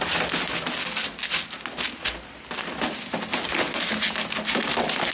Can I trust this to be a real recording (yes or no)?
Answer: yes